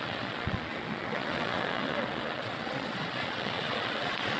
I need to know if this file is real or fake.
fake